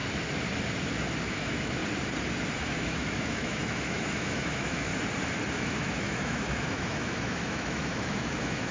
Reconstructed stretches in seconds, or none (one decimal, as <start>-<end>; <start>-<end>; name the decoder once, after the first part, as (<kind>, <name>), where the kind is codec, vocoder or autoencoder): 1.2-1.8 (autoencoder, DAC-VAE); 2.6-4.9; 5.5-8.7